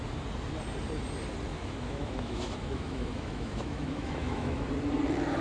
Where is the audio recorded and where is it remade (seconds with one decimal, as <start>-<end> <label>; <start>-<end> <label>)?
0.0-1.5 recorded; 1.5-4.7 remade; 4.7-5.4 recorded